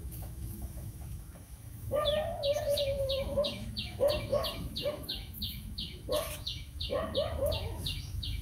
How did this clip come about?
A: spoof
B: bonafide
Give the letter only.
A